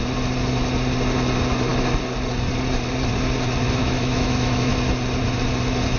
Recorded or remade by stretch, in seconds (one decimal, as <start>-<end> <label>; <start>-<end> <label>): 0.0-3.8 recorded; 3.8-4.7 remade; 4.7-6.0 recorded

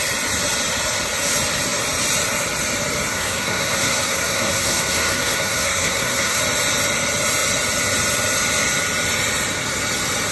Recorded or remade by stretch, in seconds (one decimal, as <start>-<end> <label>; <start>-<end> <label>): 0.0-3.1 recorded; 3.1-6.4 remade; 6.4-10.3 recorded

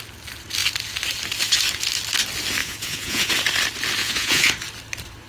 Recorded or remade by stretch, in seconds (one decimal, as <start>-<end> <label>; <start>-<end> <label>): 0.0-2.6 recorded; 2.6-3.3 remade; 3.3-4.0 recorded; 4.0-4.5 remade; 4.5-5.3 recorded

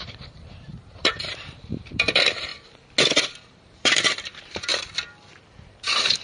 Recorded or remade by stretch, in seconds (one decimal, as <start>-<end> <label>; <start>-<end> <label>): 0.0-2.5 remade; 2.5-3.2 recorded; 3.2-4.7 remade; 4.7-5.4 recorded; 5.4-6.2 remade